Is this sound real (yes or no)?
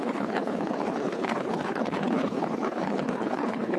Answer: no